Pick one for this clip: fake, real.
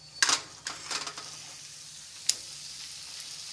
real